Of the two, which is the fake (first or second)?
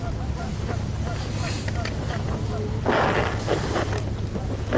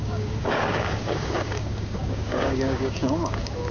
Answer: second